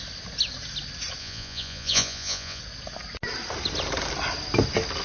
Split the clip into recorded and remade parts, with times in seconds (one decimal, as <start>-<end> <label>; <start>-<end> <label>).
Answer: 0.0-1.2 recorded; 1.2-2.6 remade; 2.6-5.0 recorded